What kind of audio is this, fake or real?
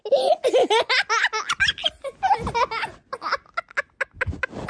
real